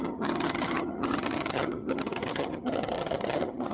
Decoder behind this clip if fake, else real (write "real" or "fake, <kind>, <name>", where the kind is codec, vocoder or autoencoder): fake, vocoder, HiFi-GAN